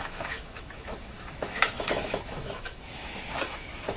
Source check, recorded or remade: remade